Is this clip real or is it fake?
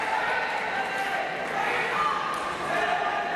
real